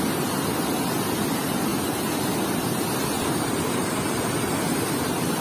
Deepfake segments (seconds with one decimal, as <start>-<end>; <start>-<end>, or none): none

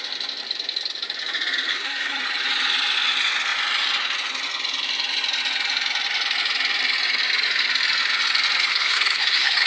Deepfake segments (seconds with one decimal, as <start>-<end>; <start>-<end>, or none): 1.7-2.2; 8.7-9.7

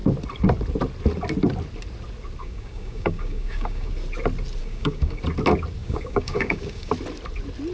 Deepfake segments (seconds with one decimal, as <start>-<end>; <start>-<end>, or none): 2.4-3.9; 4.6-5.2; 5.8-6.9